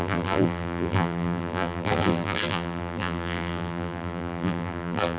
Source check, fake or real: fake